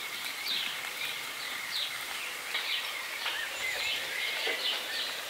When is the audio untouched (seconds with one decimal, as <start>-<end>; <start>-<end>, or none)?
none